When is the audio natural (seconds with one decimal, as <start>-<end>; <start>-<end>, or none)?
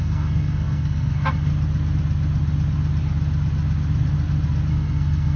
1.5-4.7